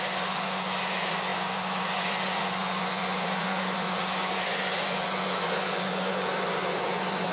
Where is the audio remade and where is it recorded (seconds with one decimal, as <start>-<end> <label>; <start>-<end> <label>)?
0.0-7.3 remade